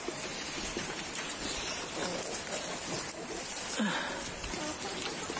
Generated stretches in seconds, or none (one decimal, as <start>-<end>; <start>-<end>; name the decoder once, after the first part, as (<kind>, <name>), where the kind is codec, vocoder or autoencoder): none